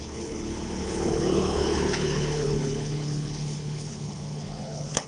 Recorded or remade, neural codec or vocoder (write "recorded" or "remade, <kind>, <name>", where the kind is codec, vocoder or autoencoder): remade, codec, HILCodec